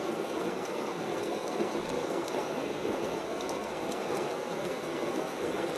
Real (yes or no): no